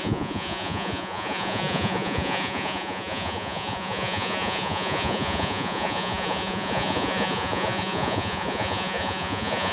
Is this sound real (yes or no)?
no